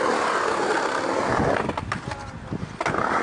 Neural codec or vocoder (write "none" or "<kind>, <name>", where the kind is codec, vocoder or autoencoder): none